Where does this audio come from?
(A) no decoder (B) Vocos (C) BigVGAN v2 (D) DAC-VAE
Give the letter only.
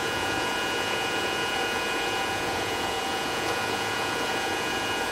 B